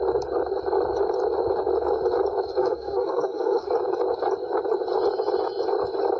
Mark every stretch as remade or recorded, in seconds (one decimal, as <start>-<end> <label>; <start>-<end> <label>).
0.0-2.6 recorded; 2.6-3.7 remade; 3.7-6.2 recorded

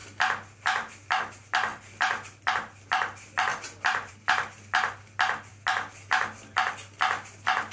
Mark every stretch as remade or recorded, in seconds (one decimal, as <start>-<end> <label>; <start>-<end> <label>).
0.0-7.7 recorded

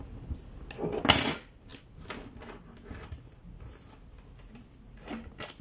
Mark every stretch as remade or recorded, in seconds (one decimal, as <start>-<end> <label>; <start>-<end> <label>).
0.0-5.6 recorded

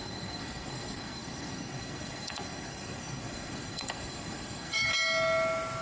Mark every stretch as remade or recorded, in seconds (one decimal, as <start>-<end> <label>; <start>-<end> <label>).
0.0-4.9 remade; 4.9-5.8 recorded

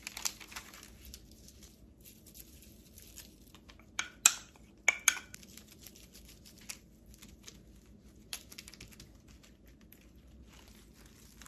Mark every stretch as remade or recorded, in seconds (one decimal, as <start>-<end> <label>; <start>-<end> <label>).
0.0-11.5 recorded

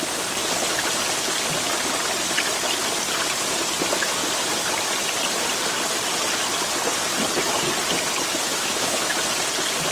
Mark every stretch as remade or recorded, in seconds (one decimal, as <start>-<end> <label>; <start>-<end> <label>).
0.0-8.5 recorded; 8.5-9.2 remade; 9.2-9.9 recorded

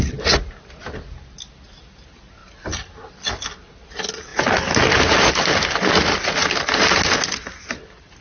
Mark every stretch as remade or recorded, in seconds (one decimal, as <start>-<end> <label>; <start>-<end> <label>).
0.0-2.4 recorded; 2.4-3.1 remade; 3.1-8.2 recorded

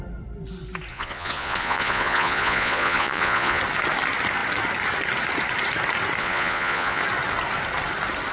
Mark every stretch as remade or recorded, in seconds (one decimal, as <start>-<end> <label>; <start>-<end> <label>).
0.0-0.9 recorded; 0.9-3.6 remade; 3.6-6.2 recorded; 6.2-7.0 remade; 7.0-8.3 recorded